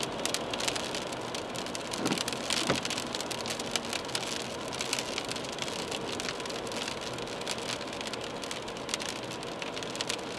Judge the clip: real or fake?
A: real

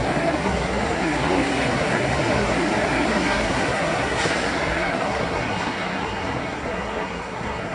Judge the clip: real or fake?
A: fake